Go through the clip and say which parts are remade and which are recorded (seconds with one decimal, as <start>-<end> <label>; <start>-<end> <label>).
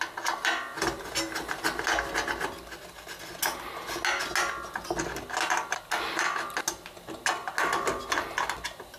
0.0-9.0 recorded